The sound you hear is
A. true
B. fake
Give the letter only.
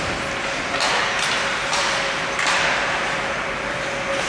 A